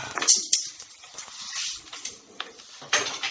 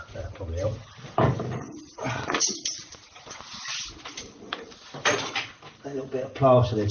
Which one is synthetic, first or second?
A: first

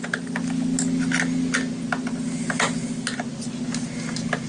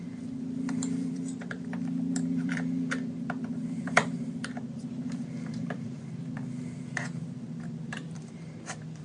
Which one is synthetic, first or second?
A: second